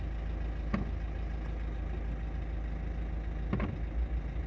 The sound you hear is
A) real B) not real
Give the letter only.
A